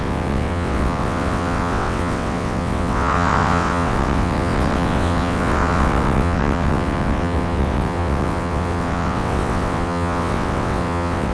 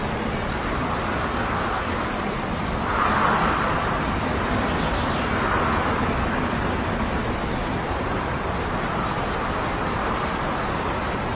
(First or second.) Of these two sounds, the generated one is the first